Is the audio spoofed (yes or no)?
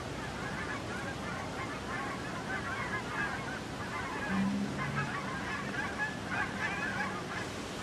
no